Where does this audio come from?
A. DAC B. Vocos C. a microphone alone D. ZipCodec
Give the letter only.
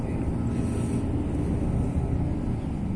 C